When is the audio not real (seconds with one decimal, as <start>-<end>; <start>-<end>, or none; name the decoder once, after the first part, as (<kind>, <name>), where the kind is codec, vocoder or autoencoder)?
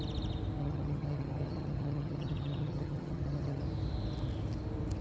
0.6-3.6 (vocoder, HiFi-GAN)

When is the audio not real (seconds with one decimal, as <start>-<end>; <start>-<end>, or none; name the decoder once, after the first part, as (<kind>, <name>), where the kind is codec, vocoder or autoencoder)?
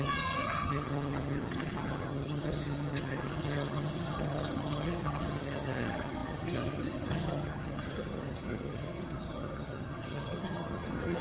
0.0-11.2 (vocoder, HiFi-GAN)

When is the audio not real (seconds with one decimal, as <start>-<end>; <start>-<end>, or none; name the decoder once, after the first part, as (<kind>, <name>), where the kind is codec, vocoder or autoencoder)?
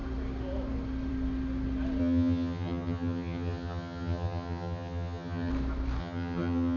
2.0-5.5 (vocoder, HiFi-GAN); 6.0-6.8